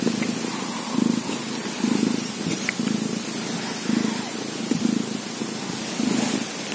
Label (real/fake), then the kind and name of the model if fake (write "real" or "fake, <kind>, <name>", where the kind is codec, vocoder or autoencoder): real